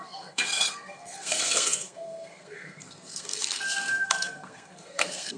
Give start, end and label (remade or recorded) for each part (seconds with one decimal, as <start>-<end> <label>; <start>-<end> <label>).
0.0-5.4 remade

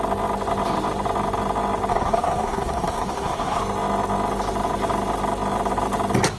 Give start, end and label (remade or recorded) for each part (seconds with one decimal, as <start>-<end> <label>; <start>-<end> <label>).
0.0-1.9 recorded; 1.9-3.6 remade; 3.6-6.4 recorded

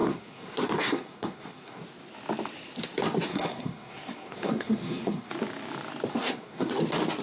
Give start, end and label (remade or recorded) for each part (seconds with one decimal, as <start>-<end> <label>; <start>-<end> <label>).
0.0-1.8 remade; 1.8-3.3 recorded; 3.3-5.3 remade; 5.3-6.1 recorded; 6.1-6.7 remade; 6.7-7.2 recorded

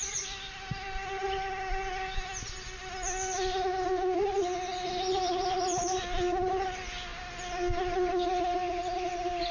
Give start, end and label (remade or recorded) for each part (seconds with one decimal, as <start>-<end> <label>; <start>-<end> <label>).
0.0-9.5 recorded

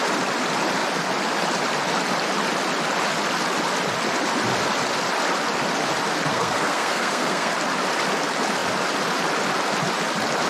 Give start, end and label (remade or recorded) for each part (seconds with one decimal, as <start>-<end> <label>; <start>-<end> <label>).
0.0-6.3 recorded; 6.3-7.5 remade; 7.5-10.5 recorded

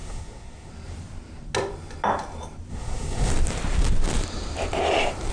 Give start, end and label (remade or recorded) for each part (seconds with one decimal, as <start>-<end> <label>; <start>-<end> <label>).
0.0-0.7 remade; 0.7-2.7 recorded; 2.7-3.3 remade; 3.3-5.3 recorded

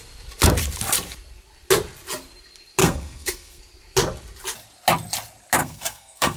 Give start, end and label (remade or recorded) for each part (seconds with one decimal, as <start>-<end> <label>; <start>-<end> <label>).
0.0-2.8 recorded; 2.8-3.6 remade; 3.6-5.6 recorded; 5.6-6.4 remade